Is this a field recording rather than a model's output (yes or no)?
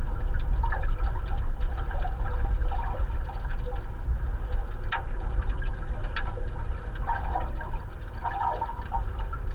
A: yes